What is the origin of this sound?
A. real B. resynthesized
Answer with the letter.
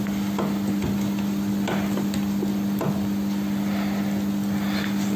A